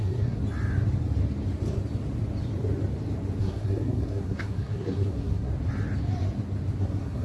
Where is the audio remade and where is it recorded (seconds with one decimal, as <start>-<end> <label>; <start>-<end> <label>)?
0.0-0.4 remade; 0.4-3.4 recorded; 3.4-5.5 remade; 5.5-6.8 recorded; 6.8-7.2 remade

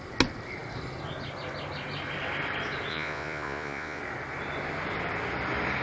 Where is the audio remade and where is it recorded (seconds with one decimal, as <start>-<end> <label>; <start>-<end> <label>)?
0.0-2.9 recorded; 2.9-4.0 remade; 4.0-5.8 recorded

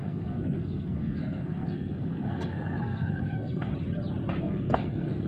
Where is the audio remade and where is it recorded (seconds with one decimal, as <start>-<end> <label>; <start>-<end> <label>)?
0.0-3.7 remade; 3.7-4.4 recorded; 4.4-5.3 remade

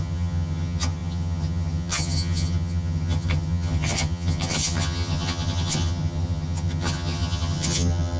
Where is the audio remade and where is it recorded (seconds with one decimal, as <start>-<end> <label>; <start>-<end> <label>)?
0.0-8.2 remade

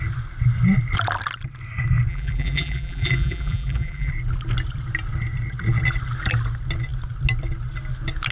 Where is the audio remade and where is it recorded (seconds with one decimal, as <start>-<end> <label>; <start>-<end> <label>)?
0.0-2.1 recorded; 2.1-4.1 remade; 4.1-8.3 recorded

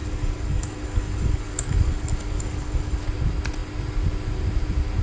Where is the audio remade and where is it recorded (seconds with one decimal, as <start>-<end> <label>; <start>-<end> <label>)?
0.0-3.0 remade; 3.0-5.0 recorded